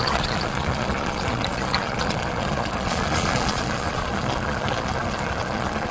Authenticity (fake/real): fake